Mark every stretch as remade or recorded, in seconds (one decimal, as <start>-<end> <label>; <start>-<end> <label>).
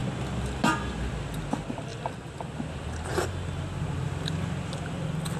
0.0-5.4 recorded